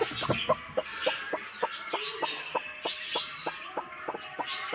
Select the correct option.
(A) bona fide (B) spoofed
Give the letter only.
A